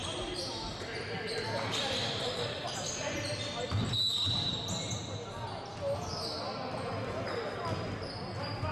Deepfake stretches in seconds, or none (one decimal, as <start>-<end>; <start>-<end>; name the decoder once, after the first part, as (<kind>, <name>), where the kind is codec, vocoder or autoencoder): none